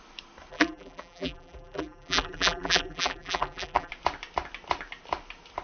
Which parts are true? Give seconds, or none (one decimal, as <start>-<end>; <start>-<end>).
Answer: 0.0-0.5; 3.9-5.6